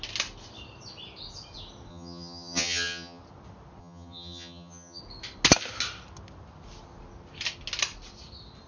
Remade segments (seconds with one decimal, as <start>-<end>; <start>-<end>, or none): 1.9-3.2; 3.8-5.0